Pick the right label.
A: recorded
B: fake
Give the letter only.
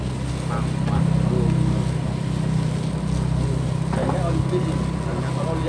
A